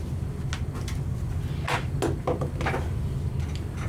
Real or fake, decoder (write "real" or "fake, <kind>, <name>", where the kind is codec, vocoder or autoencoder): real